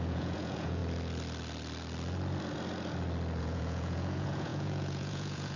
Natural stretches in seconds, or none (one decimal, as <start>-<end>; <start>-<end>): 0.8-3.4